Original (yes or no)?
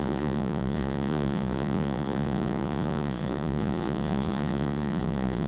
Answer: no